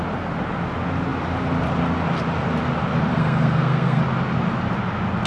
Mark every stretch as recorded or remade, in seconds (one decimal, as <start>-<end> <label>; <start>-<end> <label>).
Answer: 0.0-3.1 recorded; 3.1-4.0 remade; 4.0-5.3 recorded